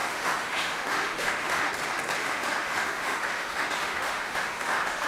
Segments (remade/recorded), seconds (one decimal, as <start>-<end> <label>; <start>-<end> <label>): 0.0-1.7 remade; 1.7-2.2 recorded; 2.2-5.1 remade